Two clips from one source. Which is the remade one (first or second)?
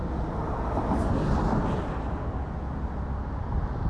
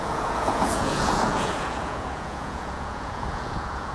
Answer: second